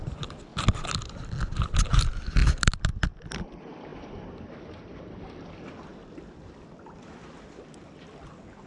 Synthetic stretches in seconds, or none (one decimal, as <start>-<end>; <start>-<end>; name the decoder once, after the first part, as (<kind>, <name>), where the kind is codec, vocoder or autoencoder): 5.9-8.7 (vocoder, BigVGAN v2)

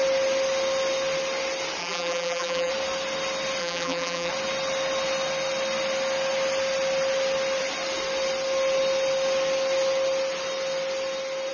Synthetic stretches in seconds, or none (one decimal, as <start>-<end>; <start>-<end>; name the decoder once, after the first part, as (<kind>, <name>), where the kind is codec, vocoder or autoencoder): 1.8-2.7 (vocoder, BigVGAN v2); 3.6-4.3

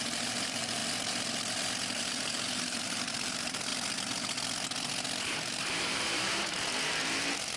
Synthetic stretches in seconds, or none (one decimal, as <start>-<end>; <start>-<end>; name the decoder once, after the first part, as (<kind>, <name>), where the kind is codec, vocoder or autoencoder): 0.0-0.8 (vocoder, BigVGAN v2); 2.0-3.7; 5.2-7.6

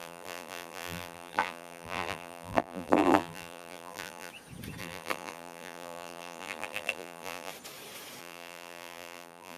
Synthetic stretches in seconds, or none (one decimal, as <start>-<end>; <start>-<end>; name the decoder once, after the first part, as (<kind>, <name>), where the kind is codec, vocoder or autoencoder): 0.0-4.3 (vocoder, BigVGAN v2); 4.8-7.5; 8.2-9.6